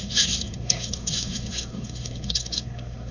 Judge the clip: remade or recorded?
remade